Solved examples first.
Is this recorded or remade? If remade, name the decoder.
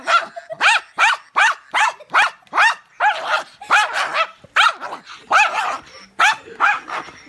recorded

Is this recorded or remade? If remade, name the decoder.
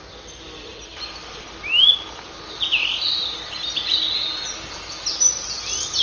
recorded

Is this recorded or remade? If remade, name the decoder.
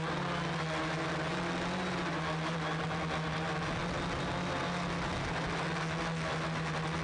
recorded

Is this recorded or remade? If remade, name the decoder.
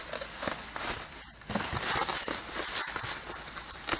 recorded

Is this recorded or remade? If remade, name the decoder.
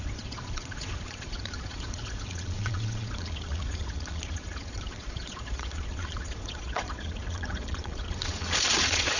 remade, vocoder, Vocos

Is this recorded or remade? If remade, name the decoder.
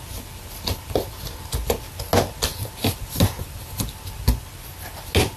recorded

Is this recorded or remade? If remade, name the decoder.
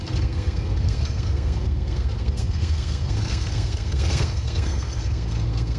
remade, codec, SNAC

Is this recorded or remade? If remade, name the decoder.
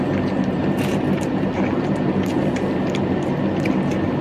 recorded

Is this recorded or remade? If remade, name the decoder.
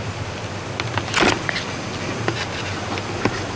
recorded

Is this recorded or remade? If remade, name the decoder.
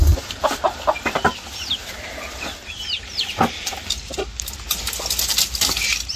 recorded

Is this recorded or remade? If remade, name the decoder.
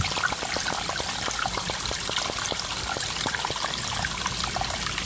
recorded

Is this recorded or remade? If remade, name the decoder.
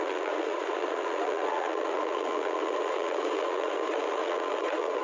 remade, vocoder, Vocos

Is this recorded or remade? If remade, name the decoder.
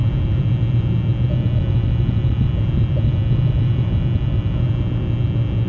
recorded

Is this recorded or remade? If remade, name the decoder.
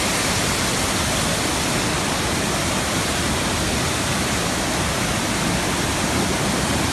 recorded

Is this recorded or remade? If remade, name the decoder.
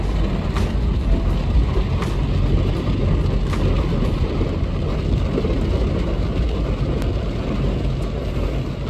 recorded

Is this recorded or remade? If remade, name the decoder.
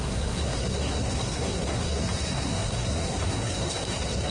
remade, codec, SNAC